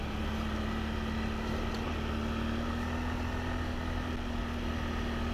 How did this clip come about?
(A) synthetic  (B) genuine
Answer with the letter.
B